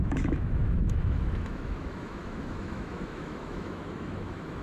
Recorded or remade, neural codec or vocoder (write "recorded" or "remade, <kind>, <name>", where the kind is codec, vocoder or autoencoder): remade, autoencoder, DAC-VAE